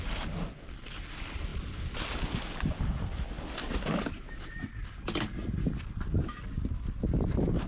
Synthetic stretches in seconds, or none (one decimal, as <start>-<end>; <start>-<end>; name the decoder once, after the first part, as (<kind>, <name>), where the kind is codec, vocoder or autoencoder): none